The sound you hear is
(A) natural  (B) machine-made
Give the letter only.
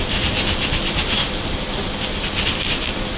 A